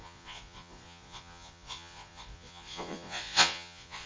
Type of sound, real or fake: fake